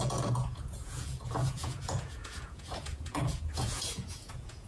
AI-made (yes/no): yes